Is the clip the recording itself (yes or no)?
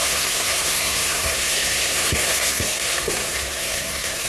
no